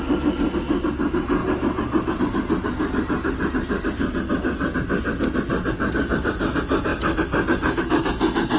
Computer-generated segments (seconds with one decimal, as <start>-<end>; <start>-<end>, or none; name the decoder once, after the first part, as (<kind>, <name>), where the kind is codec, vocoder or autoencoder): none